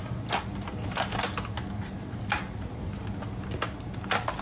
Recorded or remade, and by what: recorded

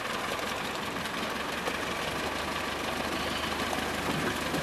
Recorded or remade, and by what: recorded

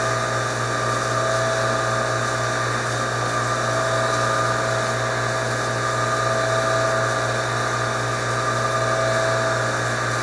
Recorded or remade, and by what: recorded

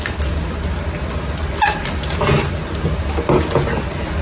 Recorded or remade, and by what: recorded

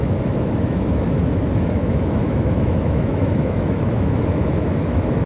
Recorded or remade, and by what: remade, autoencoder, DAC-VAE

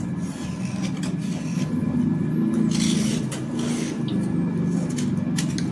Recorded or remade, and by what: recorded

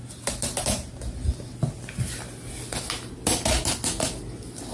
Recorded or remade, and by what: recorded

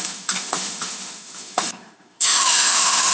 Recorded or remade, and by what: remade, autoencoder, DAC-VAE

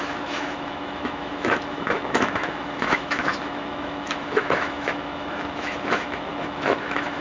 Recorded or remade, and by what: remade, autoencoder, DAC-VAE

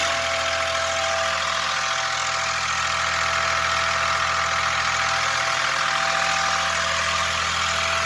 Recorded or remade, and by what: recorded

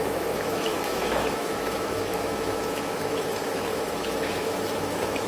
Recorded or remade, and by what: remade, autoencoder, DAC-VAE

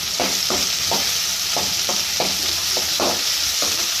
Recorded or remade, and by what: recorded